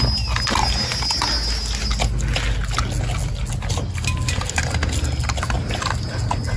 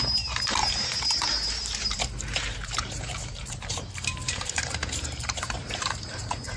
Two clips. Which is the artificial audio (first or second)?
second